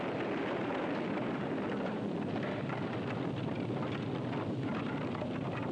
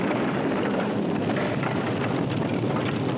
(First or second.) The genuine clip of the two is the first